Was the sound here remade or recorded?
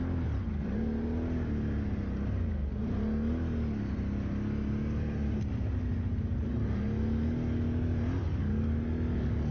recorded